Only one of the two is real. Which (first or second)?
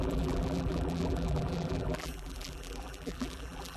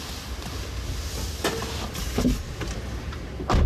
second